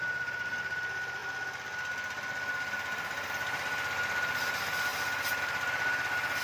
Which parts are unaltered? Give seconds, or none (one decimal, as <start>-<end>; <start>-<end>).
0.0-6.4